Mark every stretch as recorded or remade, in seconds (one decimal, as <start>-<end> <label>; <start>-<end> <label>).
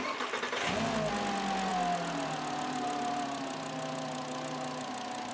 0.0-5.3 recorded